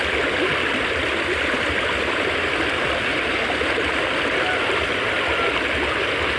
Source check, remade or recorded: remade